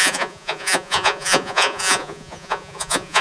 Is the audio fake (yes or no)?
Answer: yes